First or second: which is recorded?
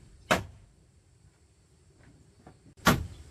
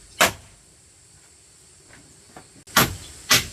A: second